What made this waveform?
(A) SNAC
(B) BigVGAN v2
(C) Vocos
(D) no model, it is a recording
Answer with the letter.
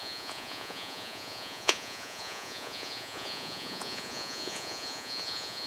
C